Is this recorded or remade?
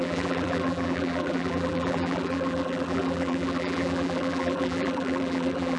remade